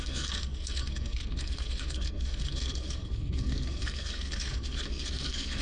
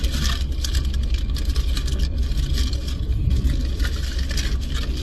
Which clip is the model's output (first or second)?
first